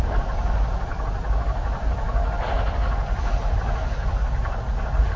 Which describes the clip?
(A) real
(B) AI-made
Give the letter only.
A